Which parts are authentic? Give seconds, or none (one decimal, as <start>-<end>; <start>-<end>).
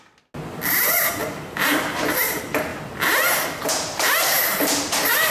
0.0-1.2; 2.0-2.7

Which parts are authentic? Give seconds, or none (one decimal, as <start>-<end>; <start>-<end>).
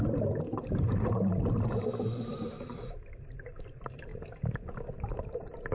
4.1-4.7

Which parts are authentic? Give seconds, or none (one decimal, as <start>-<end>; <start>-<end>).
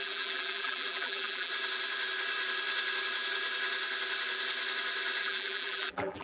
1.5-5.2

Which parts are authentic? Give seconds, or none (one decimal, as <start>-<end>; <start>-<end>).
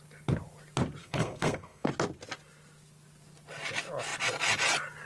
0.0-1.0; 1.9-5.1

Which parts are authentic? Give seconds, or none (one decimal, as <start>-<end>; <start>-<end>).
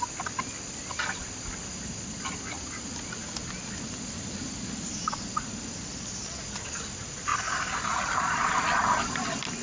0.0-9.6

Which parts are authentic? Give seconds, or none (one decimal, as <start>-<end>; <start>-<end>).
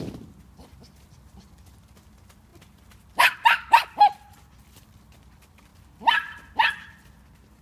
0.0-7.6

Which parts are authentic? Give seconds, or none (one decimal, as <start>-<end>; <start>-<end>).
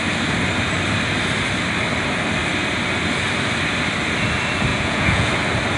0.0-4.7; 5.3-5.8